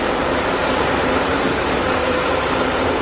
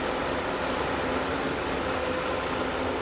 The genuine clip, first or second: second